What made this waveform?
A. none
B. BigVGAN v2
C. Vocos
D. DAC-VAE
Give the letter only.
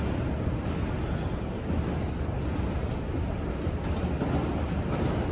A